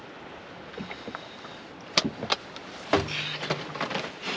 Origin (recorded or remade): recorded